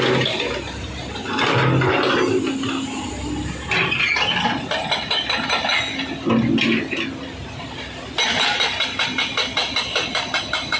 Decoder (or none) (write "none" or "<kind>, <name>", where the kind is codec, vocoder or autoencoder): none